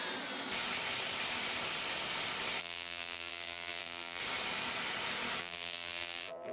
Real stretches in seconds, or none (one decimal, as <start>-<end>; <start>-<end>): 0.0-2.6; 4.2-5.4